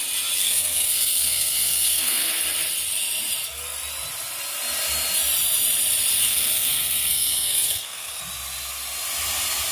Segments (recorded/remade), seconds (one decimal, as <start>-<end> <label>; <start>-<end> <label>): 0.0-0.4 recorded; 0.4-2.3 remade; 2.3-6.2 recorded; 6.2-8.2 remade; 8.2-9.7 recorded